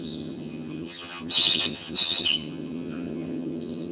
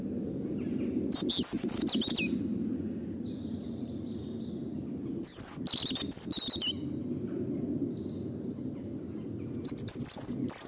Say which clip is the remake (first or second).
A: first